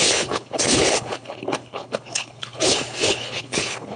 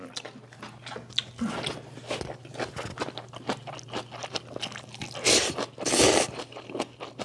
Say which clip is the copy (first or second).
first